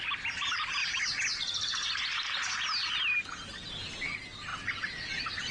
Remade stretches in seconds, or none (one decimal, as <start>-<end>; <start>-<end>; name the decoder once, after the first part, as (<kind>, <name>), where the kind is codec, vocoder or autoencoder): none